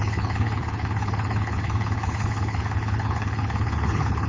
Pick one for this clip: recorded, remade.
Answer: remade